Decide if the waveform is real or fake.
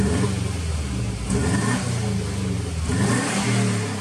real